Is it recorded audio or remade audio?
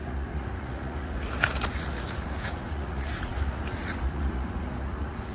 remade